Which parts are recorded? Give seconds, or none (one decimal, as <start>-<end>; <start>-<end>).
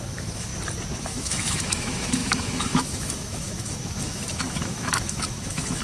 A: 0.5-1.0